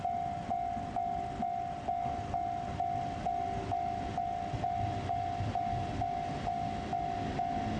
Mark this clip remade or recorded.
recorded